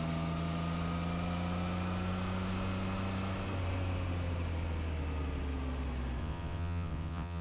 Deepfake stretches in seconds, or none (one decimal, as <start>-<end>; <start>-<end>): 6.2-7.4